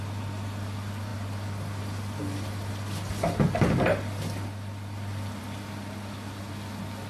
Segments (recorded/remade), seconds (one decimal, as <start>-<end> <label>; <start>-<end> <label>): 0.0-7.1 recorded